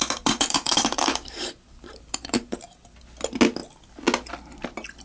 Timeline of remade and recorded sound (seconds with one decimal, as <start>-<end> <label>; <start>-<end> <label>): 0.0-3.0 remade; 3.0-5.0 recorded